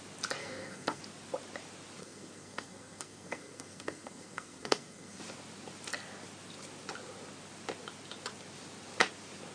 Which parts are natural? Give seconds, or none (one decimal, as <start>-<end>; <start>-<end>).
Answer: 0.0-0.4; 1.0-2.0; 5.2-9.5